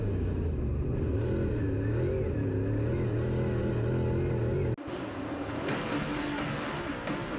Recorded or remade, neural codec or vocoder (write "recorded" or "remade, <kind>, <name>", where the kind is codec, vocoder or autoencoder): recorded